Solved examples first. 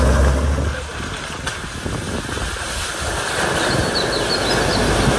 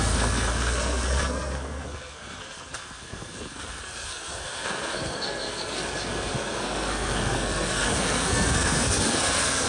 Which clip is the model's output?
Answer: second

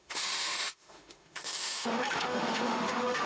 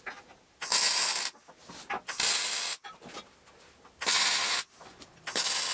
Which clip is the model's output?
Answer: first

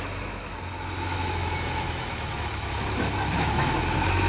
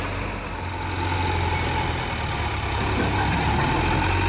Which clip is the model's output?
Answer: first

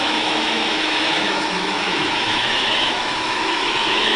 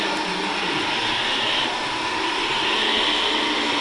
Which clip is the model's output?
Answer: first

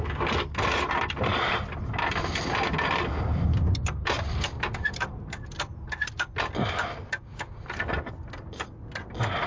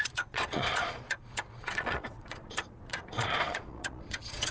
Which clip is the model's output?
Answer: second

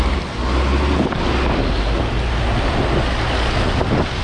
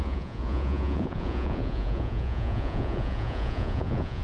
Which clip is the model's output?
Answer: second